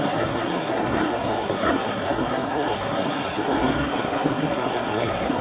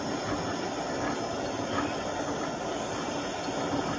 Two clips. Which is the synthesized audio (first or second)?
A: first